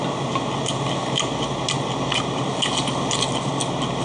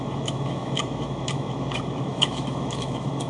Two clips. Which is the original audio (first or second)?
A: first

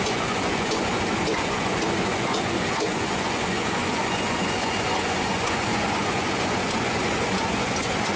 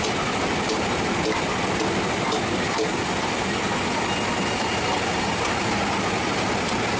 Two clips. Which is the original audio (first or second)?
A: second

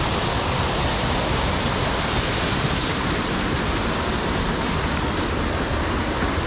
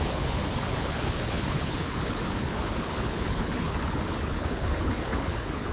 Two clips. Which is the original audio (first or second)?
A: first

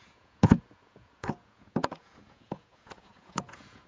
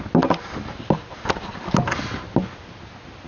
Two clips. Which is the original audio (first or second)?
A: second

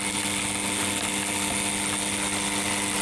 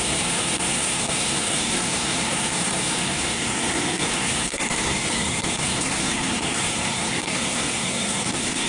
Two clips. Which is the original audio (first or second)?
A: first